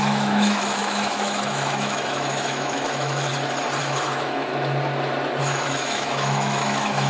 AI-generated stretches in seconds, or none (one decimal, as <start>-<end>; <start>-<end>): 0.0-3.3; 3.8-4.5; 5.4-7.1